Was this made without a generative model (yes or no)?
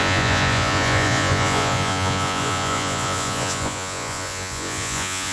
no